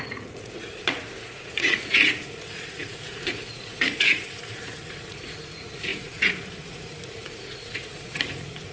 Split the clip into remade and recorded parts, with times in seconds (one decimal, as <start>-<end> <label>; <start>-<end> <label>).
0.0-8.7 remade